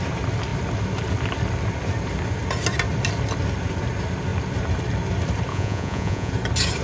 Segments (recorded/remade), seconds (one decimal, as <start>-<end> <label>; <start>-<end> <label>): 0.0-5.5 recorded; 5.5-6.3 remade; 6.3-6.8 recorded